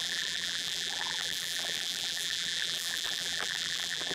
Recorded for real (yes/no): no